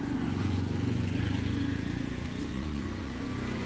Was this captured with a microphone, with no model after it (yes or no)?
no